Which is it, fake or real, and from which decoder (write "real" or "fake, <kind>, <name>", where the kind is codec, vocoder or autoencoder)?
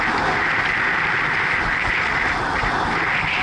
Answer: real